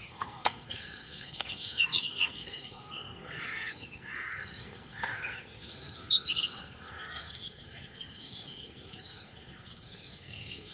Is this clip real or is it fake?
fake